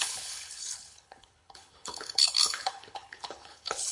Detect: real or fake fake